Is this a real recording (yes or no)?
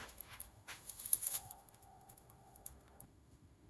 no